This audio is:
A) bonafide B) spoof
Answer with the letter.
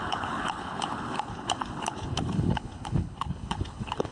B